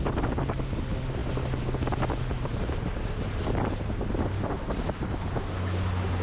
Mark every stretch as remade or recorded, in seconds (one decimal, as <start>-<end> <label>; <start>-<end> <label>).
0.0-6.2 recorded

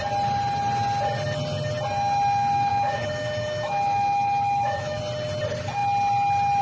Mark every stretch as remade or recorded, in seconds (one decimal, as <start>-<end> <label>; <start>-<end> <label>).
0.0-2.7 recorded; 2.7-5.0 remade; 5.0-6.6 recorded

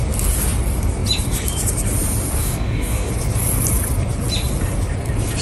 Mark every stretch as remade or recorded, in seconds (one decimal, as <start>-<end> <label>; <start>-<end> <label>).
0.0-2.4 recorded; 2.4-3.1 remade; 3.1-5.4 recorded

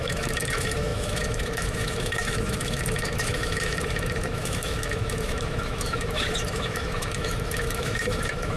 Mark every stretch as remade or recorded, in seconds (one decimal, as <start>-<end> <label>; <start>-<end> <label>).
0.0-8.6 remade

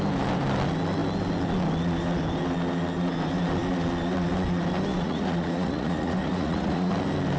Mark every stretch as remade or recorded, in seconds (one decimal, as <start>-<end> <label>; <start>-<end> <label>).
0.0-4.9 recorded; 4.9-6.9 remade; 6.9-7.4 recorded

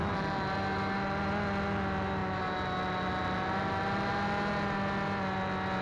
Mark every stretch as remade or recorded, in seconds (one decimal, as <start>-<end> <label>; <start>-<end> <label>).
0.0-5.8 recorded

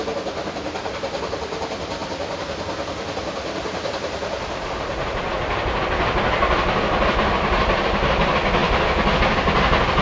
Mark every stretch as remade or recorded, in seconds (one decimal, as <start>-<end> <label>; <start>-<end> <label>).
0.0-10.0 recorded

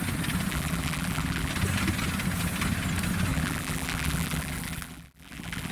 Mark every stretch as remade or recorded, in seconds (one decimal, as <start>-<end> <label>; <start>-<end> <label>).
0.0-0.5 recorded; 0.5-1.5 remade; 1.5-3.3 recorded; 3.3-5.7 remade